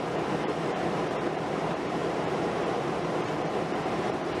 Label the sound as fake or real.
fake